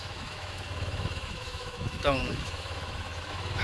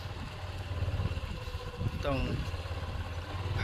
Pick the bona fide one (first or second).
second